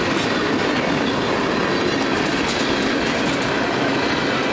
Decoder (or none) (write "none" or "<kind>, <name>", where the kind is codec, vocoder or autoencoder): none